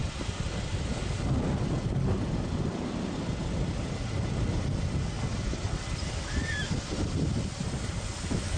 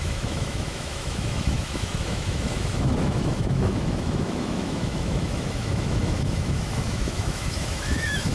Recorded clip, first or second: first